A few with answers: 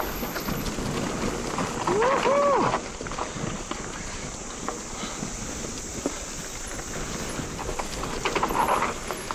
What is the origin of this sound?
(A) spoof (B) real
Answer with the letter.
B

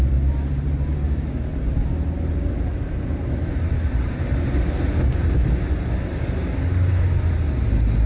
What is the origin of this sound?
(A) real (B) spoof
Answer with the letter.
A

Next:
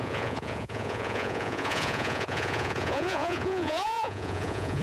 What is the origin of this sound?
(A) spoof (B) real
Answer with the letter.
A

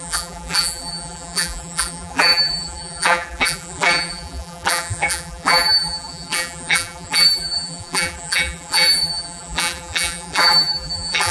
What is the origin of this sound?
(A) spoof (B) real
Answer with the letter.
A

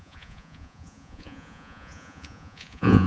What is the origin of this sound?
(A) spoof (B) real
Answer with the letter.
A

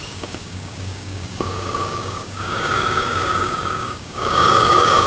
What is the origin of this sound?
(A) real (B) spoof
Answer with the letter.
B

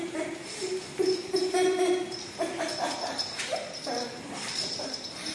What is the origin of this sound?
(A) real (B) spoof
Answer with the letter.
B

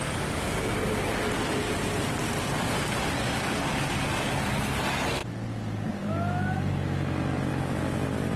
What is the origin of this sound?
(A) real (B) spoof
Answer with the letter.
A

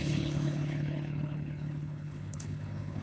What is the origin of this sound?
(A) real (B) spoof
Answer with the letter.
B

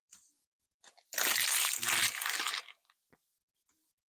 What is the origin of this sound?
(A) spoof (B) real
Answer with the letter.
A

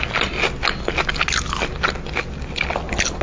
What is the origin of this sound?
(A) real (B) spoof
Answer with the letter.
A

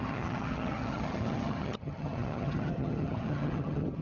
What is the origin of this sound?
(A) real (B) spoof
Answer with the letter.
B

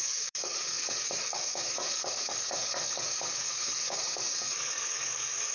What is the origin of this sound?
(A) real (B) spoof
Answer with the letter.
B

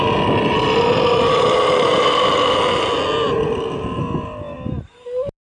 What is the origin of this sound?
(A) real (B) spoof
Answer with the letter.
A